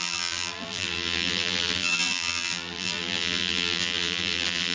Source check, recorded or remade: remade